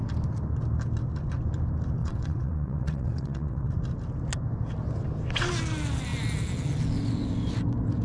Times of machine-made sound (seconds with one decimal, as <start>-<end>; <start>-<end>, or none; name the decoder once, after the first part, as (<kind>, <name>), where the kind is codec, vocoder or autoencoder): 2.0-3.7 (vocoder, WaveNeXt)